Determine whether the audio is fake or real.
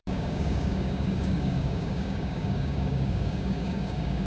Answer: fake